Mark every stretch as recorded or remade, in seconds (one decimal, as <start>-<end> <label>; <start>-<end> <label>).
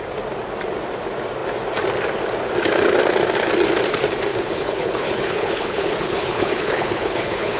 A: 0.0-4.3 recorded; 4.3-7.6 remade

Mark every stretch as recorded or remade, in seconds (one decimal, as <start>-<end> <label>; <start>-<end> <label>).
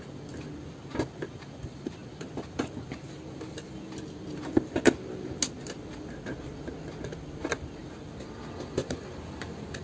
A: 0.0-9.8 recorded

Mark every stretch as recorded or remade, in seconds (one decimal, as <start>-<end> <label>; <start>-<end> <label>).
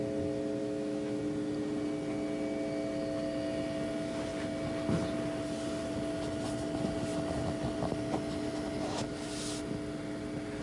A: 0.0-0.6 recorded; 0.6-1.2 remade; 1.2-10.6 recorded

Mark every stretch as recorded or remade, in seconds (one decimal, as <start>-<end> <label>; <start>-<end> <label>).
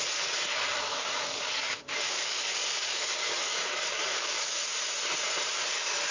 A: 0.0-0.9 recorded; 0.9-4.6 remade; 4.6-6.1 recorded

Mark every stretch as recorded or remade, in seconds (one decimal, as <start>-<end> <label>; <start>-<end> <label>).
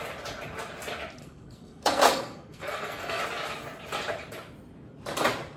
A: 0.0-1.2 recorded; 1.2-3.2 remade; 3.2-5.6 recorded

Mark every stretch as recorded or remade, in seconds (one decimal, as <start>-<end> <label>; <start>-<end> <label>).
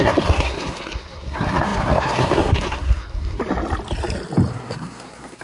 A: 0.0-3.4 remade; 3.4-4.5 recorded; 4.5-5.4 remade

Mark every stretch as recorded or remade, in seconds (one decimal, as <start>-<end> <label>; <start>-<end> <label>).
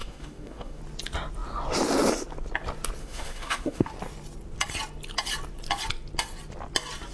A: 0.0-0.8 remade; 0.8-3.0 recorded; 3.0-3.9 remade; 3.9-7.1 recorded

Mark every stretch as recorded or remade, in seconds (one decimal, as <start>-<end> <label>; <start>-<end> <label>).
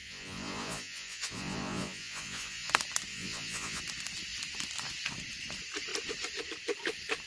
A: 0.0-2.7 remade; 2.7-3.1 recorded; 3.1-3.8 remade; 3.8-7.3 recorded